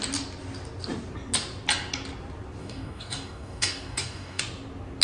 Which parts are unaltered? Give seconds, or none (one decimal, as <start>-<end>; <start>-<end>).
0.0-2.6; 4.4-5.0

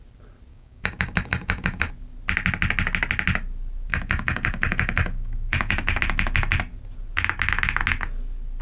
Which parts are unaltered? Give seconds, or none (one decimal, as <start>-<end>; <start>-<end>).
0.0-0.5; 1.9-3.9; 6.0-8.6

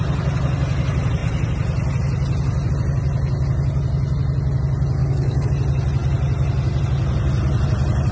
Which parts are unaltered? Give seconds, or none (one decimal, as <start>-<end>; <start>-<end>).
0.0-5.0; 5.5-8.1